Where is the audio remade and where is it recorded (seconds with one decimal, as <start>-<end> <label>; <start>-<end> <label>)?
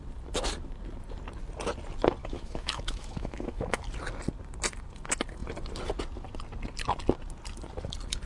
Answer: 0.0-2.2 recorded; 2.2-3.8 remade; 3.8-8.3 recorded